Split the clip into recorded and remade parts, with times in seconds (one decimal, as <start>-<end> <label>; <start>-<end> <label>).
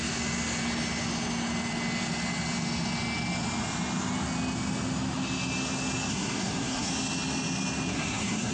0.0-6.1 recorded; 6.1-6.9 remade; 6.9-7.9 recorded; 7.9-8.5 remade